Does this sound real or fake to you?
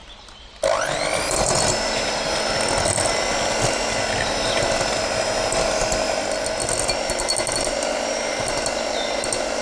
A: real